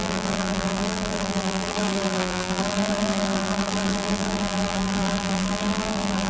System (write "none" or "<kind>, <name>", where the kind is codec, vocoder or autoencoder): vocoder, BigVGAN v2